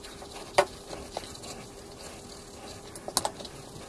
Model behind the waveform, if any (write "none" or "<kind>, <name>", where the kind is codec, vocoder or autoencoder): none